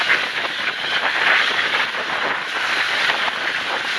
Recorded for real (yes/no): yes